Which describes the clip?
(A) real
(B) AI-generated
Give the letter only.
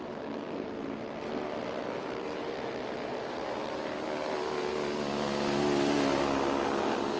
A